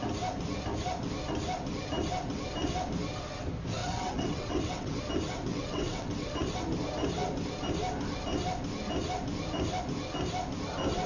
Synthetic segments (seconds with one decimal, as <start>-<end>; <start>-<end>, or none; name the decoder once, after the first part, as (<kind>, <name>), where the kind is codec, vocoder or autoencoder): 3.8-5.0 (vocoder, WaveNeXt); 5.5-6.3